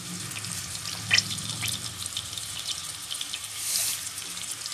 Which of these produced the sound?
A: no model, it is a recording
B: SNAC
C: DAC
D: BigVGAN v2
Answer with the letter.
A